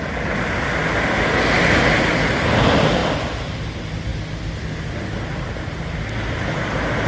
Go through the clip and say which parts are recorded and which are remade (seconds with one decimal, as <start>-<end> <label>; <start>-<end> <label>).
0.0-7.1 recorded